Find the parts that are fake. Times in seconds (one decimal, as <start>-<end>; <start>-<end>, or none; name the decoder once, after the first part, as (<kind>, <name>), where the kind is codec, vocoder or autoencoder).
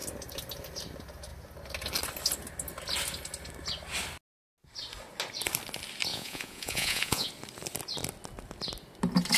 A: 6.1-7.3 (vocoder, Vocos)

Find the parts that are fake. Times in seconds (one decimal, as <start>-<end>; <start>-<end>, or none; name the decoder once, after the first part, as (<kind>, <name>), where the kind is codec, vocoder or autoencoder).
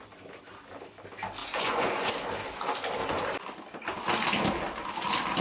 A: 1.4-2.1 (vocoder, Vocos)